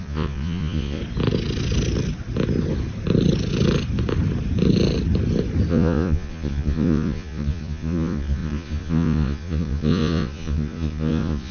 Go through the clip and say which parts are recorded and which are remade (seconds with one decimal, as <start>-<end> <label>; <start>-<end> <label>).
0.0-1.0 remade; 1.0-5.7 recorded; 5.7-11.5 remade